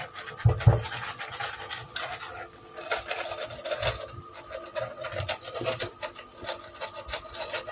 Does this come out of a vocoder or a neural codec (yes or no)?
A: no